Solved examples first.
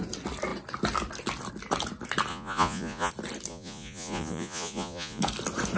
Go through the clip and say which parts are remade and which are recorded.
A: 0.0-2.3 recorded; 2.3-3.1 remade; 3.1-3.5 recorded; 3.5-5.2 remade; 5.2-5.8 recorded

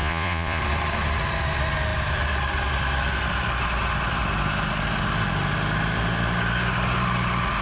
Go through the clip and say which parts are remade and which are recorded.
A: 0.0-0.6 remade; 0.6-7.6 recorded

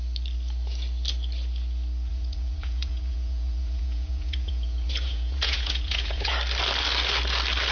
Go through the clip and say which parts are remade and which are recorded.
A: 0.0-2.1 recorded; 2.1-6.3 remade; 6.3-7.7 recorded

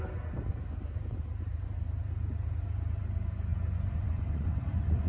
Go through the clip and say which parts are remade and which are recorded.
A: 0.0-3.5 recorded; 3.5-5.1 remade